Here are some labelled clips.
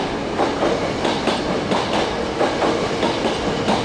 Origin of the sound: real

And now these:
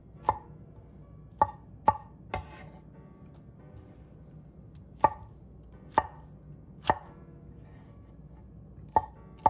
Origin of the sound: real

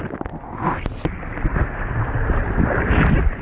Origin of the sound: real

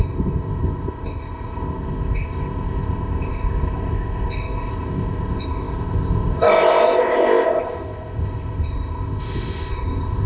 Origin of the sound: fake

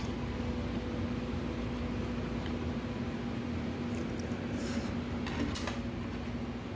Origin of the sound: real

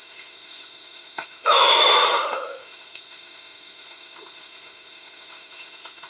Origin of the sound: fake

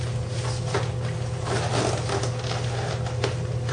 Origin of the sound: real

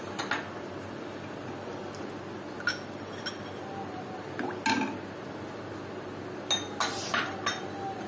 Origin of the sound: real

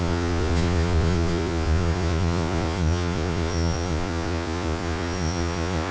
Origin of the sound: fake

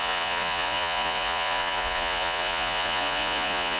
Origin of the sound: fake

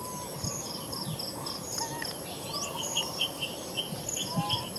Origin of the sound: real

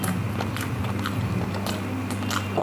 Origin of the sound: real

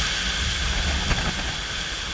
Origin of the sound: real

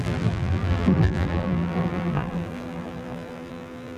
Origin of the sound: fake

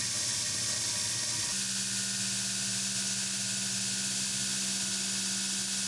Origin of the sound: real